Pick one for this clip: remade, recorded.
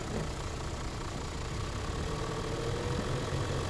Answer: recorded